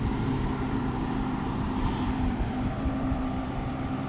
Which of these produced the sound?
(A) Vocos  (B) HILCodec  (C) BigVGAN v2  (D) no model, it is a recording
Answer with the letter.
C